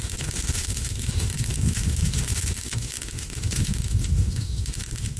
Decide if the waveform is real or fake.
fake